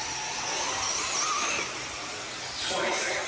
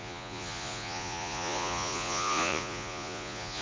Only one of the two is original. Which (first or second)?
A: first